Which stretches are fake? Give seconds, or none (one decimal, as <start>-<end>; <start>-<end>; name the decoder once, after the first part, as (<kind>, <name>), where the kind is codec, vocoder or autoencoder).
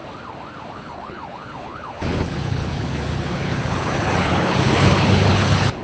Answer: 0.7-5.8 (codec, HILCodec)